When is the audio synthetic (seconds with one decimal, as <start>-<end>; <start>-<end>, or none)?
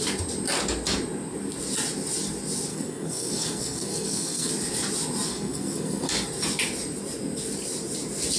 2.7-4.5; 5.3-6.1